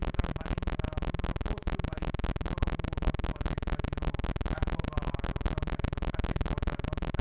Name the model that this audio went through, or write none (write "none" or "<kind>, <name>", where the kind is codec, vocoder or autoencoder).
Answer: autoencoder, DAC-VAE